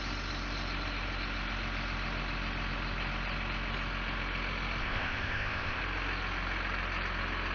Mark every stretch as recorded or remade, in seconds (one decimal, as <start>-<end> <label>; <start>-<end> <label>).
0.0-4.8 recorded; 4.8-5.8 remade; 5.8-7.5 recorded